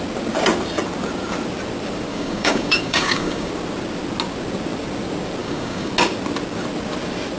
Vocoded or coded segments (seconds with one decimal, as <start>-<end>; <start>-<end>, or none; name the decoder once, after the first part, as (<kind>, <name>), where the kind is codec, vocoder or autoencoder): 2.1-3.5 (codec, DAC); 5.4-5.9